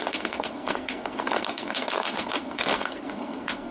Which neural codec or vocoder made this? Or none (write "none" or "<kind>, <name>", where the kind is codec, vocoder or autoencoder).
codec, SNAC